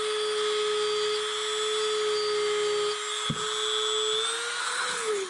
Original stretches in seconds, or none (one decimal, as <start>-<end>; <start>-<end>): 0.0-4.6